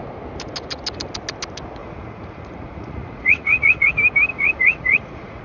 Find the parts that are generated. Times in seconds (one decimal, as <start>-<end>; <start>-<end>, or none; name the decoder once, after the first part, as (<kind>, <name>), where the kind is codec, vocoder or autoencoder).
1.8-3.9 (vocoder, Vocos); 4.3-5.4